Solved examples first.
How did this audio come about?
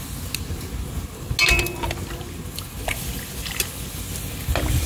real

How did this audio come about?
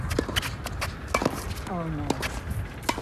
real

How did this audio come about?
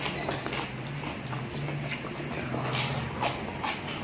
real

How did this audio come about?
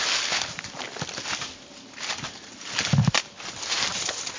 real